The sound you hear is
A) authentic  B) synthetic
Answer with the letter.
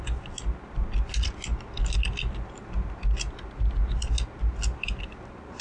A